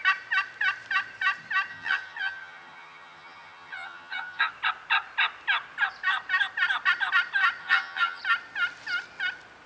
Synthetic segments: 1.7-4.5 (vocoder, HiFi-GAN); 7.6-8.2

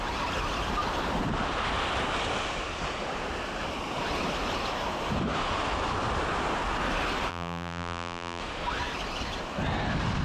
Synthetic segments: 7.3-8.4 (vocoder, BigVGAN v2)